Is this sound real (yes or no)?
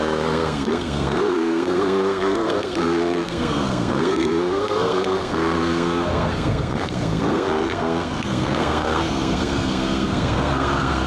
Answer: no